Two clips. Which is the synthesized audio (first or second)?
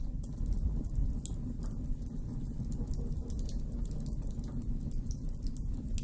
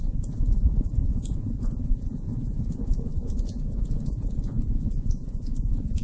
second